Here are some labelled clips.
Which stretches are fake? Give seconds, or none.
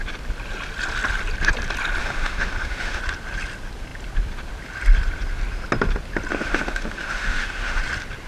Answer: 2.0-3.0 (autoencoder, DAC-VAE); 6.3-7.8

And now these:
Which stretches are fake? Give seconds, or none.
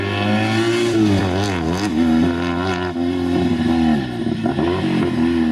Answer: none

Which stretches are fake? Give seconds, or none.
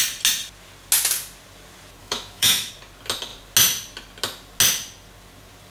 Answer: 2.0-2.7 (autoencoder, DAC-VAE)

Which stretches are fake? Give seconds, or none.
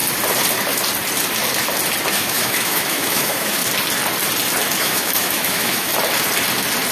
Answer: 2.1-3.6 (autoencoder, DAC-VAE); 4.8-5.9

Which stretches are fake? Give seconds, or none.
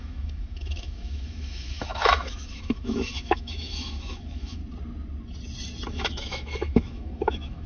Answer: 0.0-4.6 (autoencoder, DAC-VAE); 5.9-7.7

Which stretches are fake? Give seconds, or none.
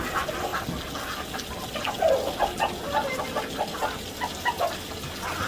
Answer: none